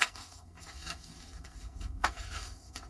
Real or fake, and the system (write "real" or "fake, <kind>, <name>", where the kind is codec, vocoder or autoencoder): fake, codec, SNAC